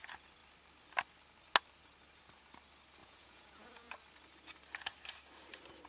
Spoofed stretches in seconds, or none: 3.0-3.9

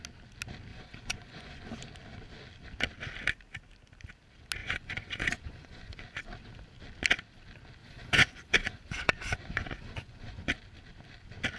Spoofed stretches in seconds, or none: 0.7-1.7; 4.6-6.0; 7.8-10.5

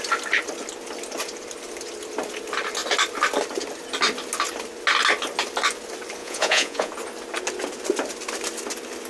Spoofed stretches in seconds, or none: 6.2-6.9

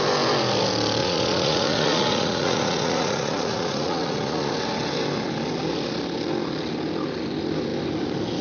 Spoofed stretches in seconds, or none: 1.0-4.5